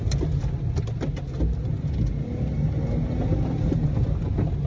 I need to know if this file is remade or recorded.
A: recorded